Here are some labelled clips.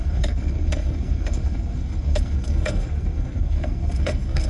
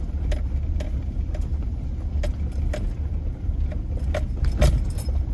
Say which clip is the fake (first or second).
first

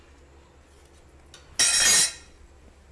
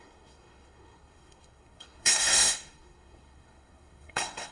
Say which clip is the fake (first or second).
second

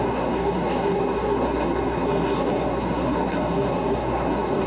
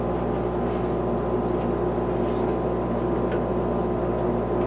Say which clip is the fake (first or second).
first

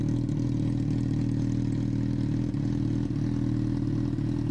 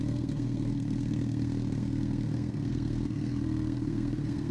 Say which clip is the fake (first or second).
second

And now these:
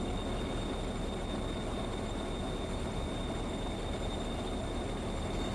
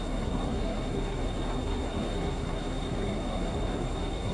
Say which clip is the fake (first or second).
second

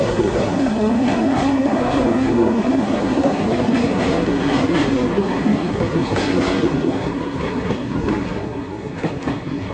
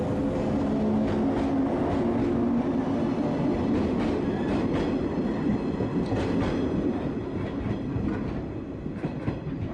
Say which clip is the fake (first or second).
first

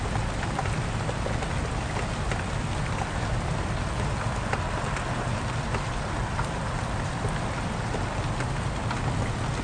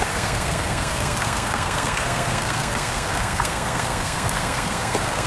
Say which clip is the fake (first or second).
second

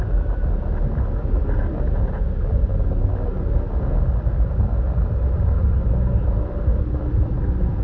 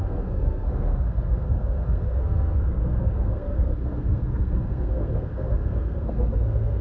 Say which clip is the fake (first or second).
second